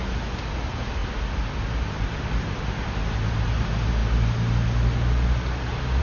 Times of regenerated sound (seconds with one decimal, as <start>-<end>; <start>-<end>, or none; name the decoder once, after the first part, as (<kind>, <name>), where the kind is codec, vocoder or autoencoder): none